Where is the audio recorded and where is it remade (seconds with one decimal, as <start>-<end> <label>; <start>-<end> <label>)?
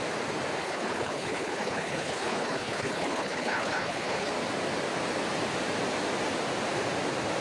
0.0-0.6 recorded; 0.6-4.3 remade; 4.3-7.4 recorded